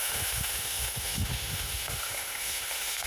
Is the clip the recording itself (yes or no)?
no